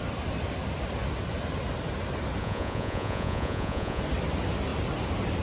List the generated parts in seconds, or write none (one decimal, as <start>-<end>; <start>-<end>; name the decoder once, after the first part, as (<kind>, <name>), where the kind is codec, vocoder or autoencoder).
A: 2.4-4.0 (vocoder, Vocos)